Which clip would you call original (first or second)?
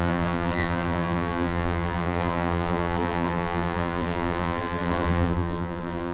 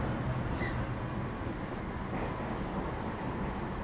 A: second